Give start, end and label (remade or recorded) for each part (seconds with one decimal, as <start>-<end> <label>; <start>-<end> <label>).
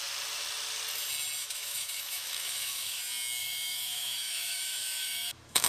0.0-1.4 recorded; 1.4-3.0 remade; 3.0-3.4 recorded; 3.4-5.7 remade